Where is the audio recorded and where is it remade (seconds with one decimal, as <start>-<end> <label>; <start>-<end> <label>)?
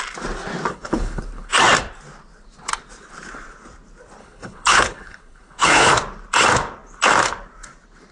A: 0.0-0.7 recorded; 0.7-1.5 remade; 1.5-4.2 recorded; 4.2-5.9 remade; 5.9-8.1 recorded